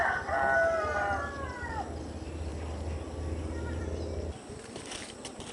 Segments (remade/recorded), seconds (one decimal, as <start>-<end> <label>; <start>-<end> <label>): 0.0-5.5 recorded